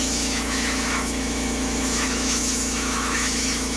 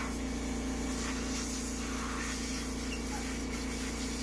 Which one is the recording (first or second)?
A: second